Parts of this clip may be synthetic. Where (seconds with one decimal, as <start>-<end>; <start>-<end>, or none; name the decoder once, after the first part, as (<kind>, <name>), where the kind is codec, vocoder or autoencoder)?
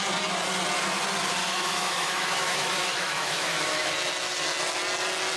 1.4-3.9 (autoencoder, DAC-VAE)